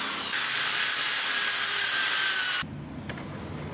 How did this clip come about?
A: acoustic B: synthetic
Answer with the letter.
A